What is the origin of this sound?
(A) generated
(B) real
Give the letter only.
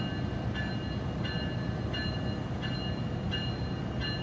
B